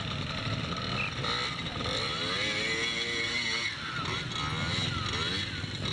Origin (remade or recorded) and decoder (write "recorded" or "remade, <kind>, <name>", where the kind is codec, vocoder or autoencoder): recorded